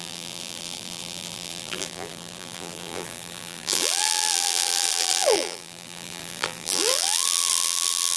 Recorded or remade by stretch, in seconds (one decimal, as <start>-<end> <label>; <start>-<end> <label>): 0.0-8.2 remade